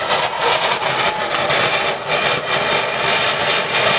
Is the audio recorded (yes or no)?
yes